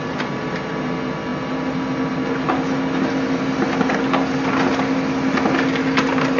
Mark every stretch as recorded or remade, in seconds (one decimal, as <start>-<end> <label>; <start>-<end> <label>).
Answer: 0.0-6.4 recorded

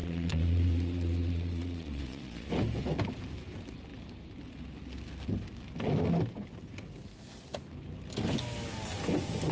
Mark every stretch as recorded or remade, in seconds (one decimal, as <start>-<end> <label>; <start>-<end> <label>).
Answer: 0.0-2.5 remade; 2.5-9.5 recorded

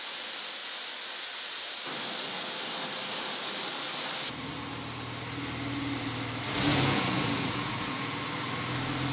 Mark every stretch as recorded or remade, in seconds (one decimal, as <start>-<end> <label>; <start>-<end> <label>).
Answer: 0.0-6.7 recorded; 6.7-8.2 remade; 8.2-9.1 recorded

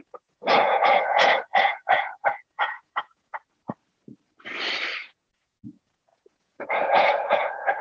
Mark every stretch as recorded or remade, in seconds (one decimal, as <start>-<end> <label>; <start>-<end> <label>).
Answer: 0.0-3.3 remade; 3.3-5.0 recorded; 5.0-7.8 remade